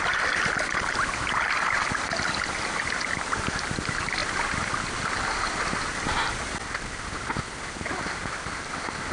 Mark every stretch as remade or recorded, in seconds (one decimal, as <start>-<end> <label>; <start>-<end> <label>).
0.0-9.1 recorded